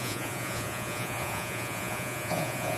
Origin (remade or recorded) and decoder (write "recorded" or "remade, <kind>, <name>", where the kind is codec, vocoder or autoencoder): remade, vocoder, Vocos